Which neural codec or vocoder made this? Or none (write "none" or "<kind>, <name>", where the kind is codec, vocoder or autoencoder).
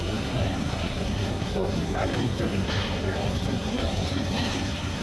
codec, SNAC